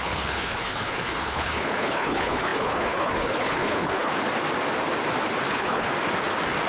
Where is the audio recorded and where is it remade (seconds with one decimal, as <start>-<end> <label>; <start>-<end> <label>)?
0.0-4.1 remade; 4.1-5.5 recorded; 5.5-5.9 remade; 5.9-6.7 recorded